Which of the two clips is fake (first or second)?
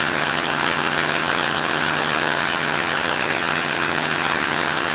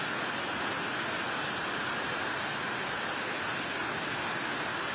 first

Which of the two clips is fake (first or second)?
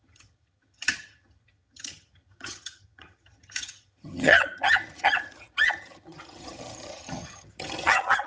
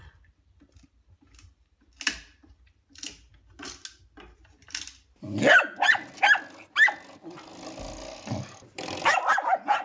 first